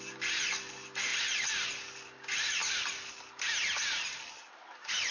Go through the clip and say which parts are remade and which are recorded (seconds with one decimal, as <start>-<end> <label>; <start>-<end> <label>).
0.0-5.1 recorded